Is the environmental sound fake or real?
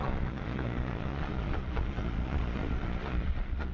fake